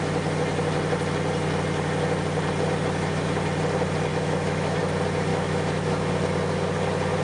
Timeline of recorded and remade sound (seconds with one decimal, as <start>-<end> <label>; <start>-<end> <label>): 0.0-4.1 recorded; 4.1-4.8 remade; 4.8-5.3 recorded; 5.3-6.1 remade; 6.1-7.2 recorded